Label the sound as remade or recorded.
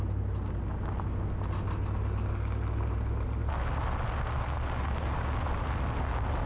recorded